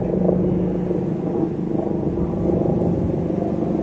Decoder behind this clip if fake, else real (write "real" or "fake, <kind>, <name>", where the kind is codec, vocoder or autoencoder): real